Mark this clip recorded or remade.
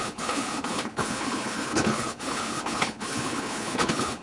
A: remade